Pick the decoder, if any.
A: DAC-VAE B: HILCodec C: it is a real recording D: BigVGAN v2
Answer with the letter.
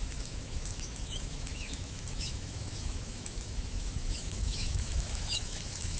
A